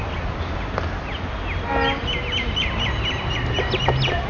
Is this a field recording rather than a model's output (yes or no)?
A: yes